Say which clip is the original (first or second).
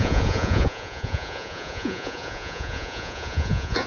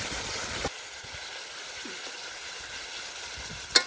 second